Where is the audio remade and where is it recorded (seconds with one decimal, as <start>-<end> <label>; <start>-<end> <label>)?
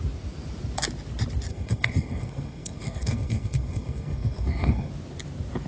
0.0-1.5 recorded; 1.5-4.9 remade; 4.9-5.7 recorded